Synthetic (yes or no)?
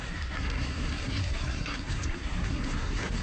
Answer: yes